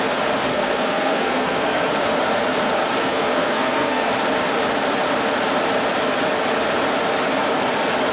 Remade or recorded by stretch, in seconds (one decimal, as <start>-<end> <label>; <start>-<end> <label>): 0.0-0.5 recorded; 0.5-1.9 remade; 1.9-3.0 recorded; 3.0-4.1 remade; 4.1-8.1 recorded